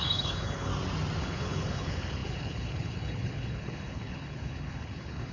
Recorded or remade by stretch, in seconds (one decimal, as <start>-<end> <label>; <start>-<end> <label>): 0.0-0.7 remade; 0.7-1.2 recorded; 1.2-5.3 remade